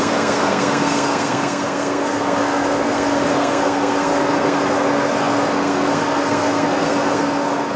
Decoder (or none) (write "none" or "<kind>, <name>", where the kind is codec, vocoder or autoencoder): codec, SNAC